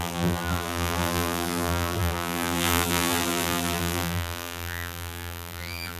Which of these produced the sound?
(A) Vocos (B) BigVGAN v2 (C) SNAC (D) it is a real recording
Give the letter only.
B